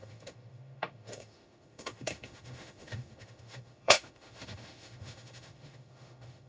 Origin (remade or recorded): remade